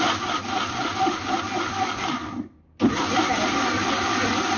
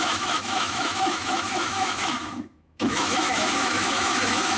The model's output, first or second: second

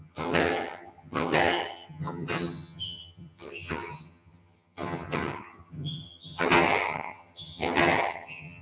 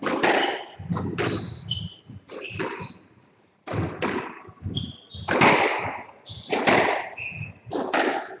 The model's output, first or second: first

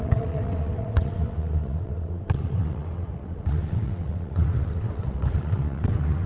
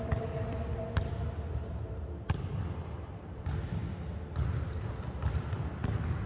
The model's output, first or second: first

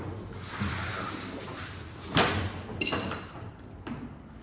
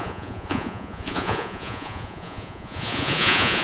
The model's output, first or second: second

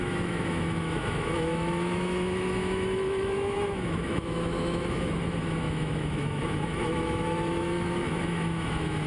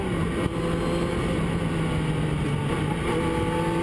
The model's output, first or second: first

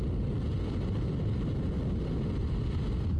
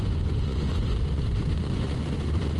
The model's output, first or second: second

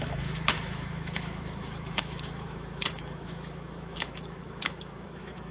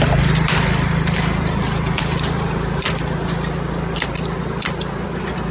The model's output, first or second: first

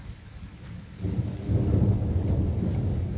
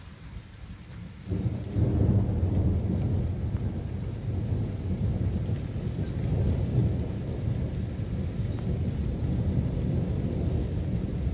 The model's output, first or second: first